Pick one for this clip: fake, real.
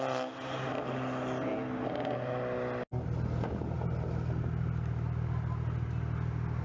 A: real